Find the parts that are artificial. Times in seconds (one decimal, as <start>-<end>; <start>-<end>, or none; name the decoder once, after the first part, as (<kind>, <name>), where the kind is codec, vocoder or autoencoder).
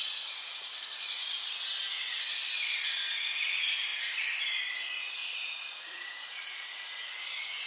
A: 0.0-1.5 (vocoder, Vocos); 5.2-6.6